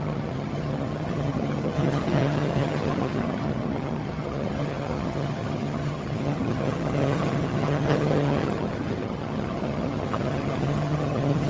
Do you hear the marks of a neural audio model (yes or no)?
yes